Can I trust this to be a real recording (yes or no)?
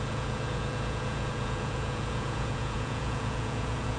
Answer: no